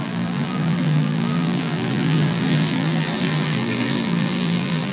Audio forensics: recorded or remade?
remade